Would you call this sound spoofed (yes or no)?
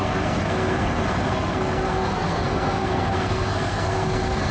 yes